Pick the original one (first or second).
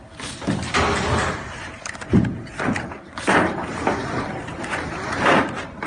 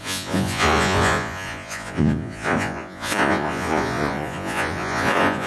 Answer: first